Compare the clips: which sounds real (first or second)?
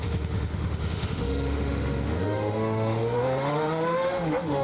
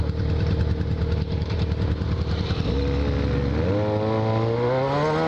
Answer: second